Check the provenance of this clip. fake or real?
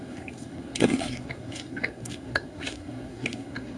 fake